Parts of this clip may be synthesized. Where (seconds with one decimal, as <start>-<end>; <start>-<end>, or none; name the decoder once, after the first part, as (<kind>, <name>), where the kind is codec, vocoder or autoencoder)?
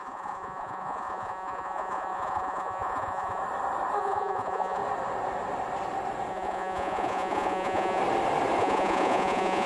0.0-3.4 (vocoder, Vocos); 4.0-4.8; 6.3-8.0; 8.6-9.7